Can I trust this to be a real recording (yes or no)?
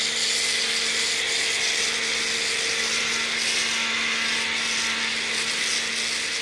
yes